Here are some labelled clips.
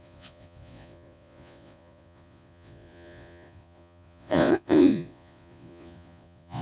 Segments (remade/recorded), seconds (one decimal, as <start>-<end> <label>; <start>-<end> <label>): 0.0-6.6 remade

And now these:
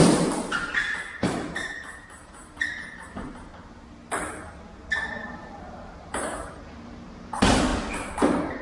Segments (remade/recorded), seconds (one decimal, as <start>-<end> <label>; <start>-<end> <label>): 0.0-3.5 remade; 3.5-4.3 recorded; 4.3-7.7 remade; 7.7-8.6 recorded

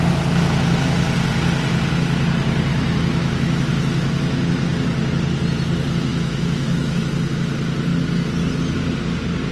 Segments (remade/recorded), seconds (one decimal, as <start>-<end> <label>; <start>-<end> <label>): 0.0-2.7 recorded; 2.7-3.7 remade; 3.7-6.1 recorded; 6.1-7.1 remade; 7.1-9.5 recorded

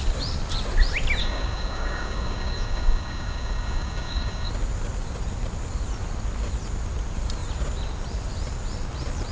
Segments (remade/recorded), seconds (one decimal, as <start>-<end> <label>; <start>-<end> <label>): 0.0-1.2 recorded; 1.2-4.5 remade; 4.5-9.3 recorded

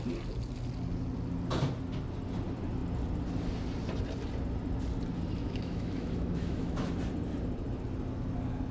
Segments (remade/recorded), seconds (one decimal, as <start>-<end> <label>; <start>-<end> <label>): 0.0-5.4 recorded; 5.4-6.9 remade; 6.9-8.7 recorded